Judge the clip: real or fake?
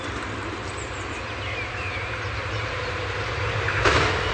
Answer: real